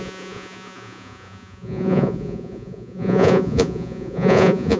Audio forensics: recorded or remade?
remade